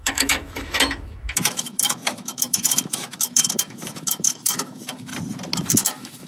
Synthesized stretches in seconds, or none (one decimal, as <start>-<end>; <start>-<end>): 0.0-5.1; 5.7-6.3